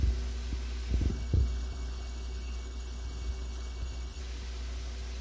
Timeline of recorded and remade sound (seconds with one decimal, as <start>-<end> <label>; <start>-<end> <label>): 0.0-1.1 recorded; 1.1-4.2 remade; 4.2-5.2 recorded